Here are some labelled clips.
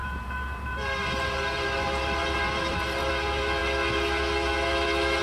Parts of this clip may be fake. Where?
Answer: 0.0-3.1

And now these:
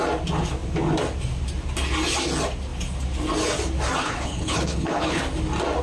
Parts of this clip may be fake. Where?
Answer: 4.0-5.2

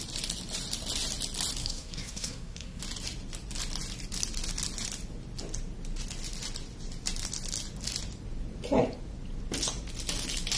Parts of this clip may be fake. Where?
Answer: 1.6-2.8